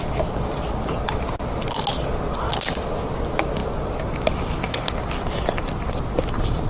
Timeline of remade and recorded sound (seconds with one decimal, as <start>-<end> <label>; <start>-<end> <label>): 0.0-6.7 recorded